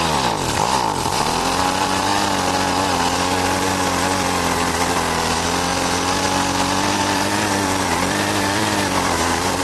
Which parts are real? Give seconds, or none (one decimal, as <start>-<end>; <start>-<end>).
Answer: 2.1-3.7; 5.7-7.0